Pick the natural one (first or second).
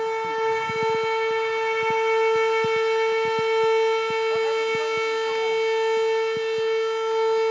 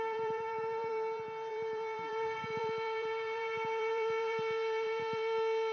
first